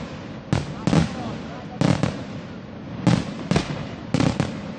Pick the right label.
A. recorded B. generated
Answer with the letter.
A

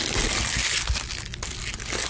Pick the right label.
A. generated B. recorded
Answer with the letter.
B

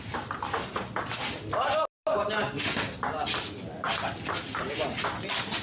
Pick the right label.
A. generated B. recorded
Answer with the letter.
B